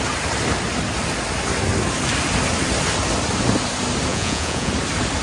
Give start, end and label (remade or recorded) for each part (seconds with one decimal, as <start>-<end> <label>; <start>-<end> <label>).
0.0-4.1 recorded; 4.1-4.7 remade; 4.7-5.2 recorded